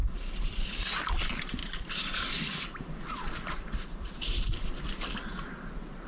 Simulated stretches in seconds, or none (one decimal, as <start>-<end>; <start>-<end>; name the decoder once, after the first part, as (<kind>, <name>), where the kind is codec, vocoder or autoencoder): 0.0-0.6 (vocoder, BigVGAN v2); 1.6-4.8